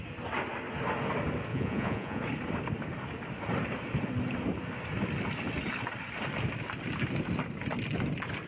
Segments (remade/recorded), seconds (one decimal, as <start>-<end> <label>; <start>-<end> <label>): 0.0-1.5 recorded; 1.5-2.2 remade; 2.2-8.5 recorded